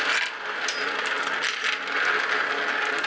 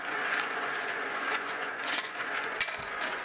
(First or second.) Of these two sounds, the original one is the first